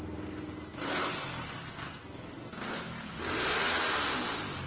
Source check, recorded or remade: recorded